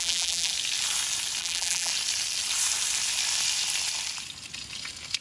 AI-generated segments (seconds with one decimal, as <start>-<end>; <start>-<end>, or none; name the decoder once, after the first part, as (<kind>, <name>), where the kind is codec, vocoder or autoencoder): 0.0-0.5 (vocoder, BigVGAN v2); 1.4-1.9